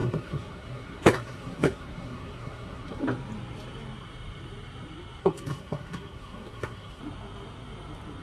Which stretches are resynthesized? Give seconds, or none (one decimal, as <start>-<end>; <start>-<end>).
0.0-3.0; 5.2-7.0